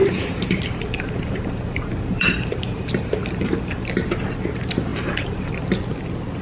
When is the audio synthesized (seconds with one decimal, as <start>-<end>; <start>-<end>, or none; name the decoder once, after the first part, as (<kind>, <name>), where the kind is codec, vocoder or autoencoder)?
0.0-3.8 (vocoder, BigVGAN v2); 4.9-5.5